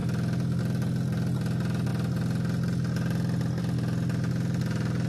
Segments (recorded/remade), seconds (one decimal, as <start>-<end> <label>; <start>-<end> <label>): 0.0-5.1 recorded